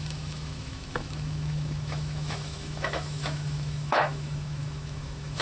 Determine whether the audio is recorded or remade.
remade